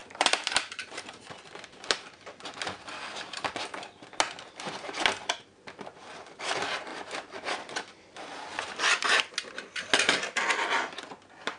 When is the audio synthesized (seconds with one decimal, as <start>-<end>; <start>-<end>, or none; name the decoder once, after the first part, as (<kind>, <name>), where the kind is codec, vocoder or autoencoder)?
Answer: 0.0-2.2 (vocoder, BigVGAN v2); 6.9-9.3